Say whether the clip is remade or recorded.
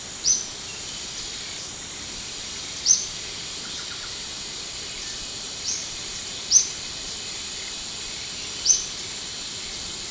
remade